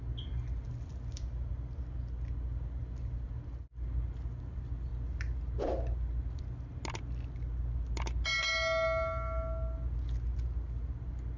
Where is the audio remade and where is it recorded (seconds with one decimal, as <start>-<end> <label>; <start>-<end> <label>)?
0.0-11.4 recorded